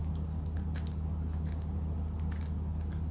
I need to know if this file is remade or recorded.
recorded